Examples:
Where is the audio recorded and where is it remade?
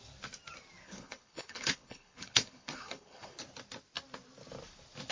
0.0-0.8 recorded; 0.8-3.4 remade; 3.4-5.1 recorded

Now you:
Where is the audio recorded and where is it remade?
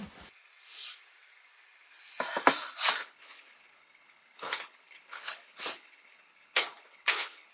0.0-3.0 recorded; 3.0-7.5 remade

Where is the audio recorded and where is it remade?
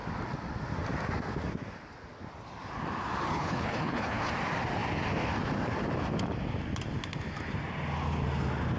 0.0-3.3 recorded; 3.3-4.3 remade; 4.3-8.8 recorded